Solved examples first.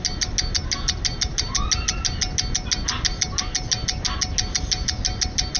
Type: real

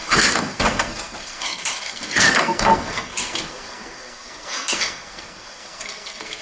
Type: fake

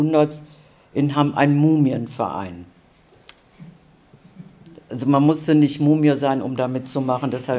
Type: real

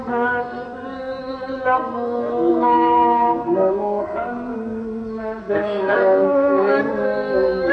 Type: fake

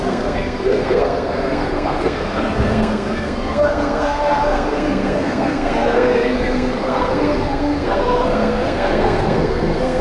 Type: fake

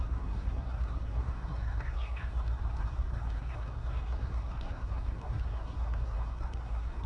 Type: fake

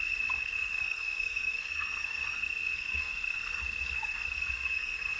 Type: fake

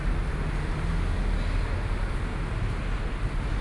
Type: real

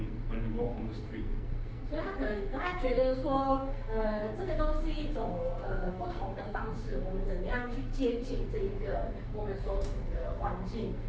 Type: fake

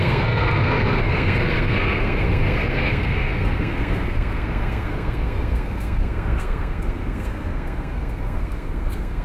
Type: fake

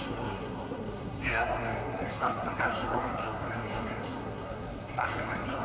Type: fake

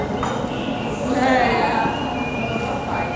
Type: real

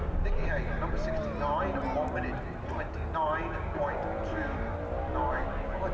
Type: real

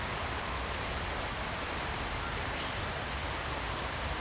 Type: real